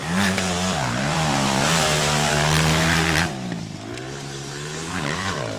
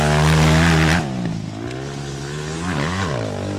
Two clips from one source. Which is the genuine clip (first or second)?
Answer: second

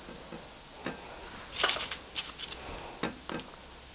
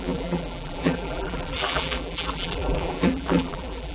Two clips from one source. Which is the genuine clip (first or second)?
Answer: first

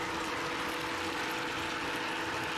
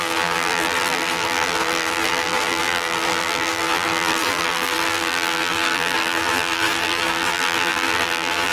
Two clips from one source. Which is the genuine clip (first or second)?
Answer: first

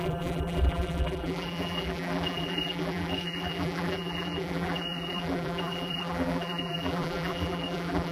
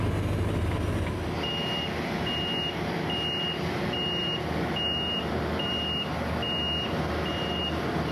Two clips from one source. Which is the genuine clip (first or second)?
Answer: second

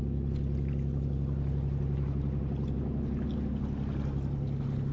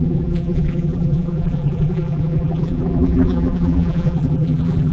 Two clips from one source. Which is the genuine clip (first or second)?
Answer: first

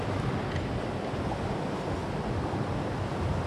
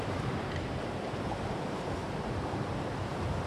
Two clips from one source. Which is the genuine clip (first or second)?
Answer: first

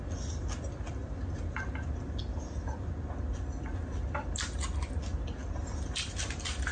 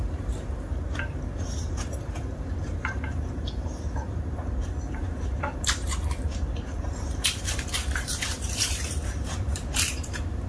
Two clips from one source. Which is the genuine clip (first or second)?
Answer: first